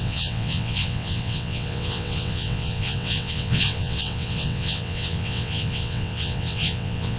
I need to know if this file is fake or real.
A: fake